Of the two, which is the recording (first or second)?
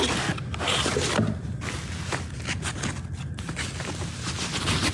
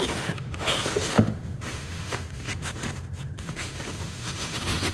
first